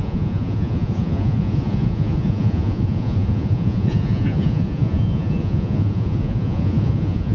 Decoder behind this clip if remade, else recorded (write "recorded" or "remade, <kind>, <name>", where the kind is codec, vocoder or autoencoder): remade, vocoder, Vocos